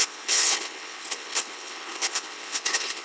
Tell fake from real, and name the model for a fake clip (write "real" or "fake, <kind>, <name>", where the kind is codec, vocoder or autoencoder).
fake, codec, HILCodec